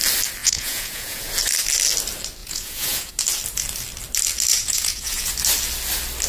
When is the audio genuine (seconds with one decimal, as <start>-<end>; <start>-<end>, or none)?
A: 0.0-0.4; 1.3-2.4; 3.1-4.5; 5.3-6.3